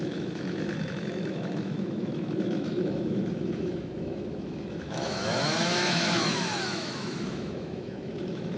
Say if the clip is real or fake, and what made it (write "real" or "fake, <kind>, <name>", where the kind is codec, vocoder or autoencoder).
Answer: fake, autoencoder, DAC-VAE